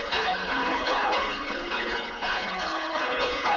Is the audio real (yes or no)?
no